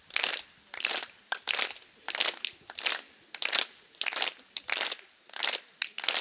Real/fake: real